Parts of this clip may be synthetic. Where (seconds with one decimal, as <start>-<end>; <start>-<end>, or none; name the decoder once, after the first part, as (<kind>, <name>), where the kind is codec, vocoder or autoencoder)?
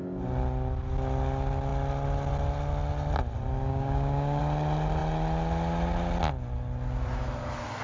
3.7-4.4 (codec, DAC)